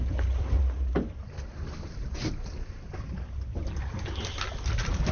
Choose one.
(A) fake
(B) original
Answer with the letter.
B